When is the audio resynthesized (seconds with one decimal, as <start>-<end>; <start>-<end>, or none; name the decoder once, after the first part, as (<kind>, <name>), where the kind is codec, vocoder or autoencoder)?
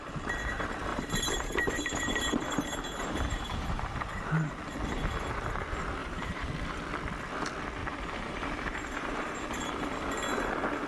0.9-4.5 (vocoder, BigVGAN v2); 6.0-6.5; 7.8-9.7